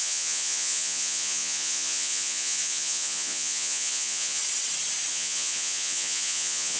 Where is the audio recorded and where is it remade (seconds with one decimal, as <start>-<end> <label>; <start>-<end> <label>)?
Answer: 0.0-4.4 remade; 4.4-5.1 recorded; 5.1-6.8 remade